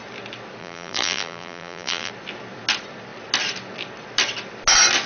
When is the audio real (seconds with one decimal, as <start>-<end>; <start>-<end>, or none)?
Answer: 0.0-0.6; 2.1-5.1